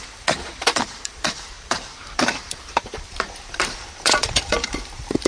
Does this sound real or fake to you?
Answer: fake